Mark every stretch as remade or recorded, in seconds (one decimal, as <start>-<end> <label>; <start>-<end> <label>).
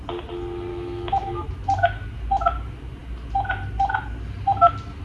0.0-0.7 recorded; 0.7-1.4 remade; 1.4-5.0 recorded